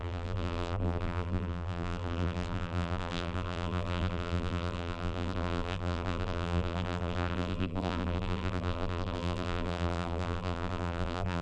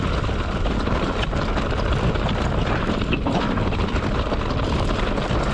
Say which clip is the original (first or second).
second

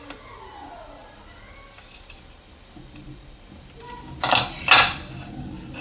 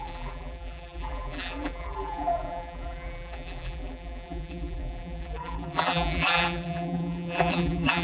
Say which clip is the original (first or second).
first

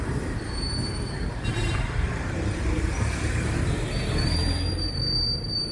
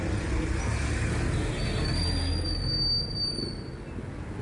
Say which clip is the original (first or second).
second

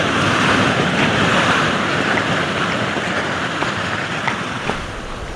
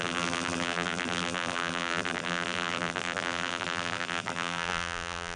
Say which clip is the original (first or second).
first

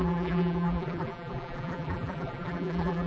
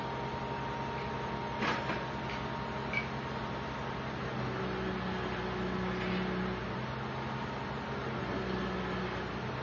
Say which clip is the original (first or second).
second